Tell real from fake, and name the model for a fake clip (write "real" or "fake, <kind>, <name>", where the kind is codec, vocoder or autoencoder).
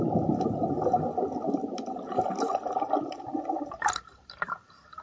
real